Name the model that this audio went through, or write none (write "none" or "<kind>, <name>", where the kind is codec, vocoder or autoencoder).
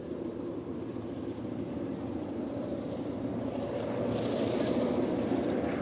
vocoder, BigVGAN v2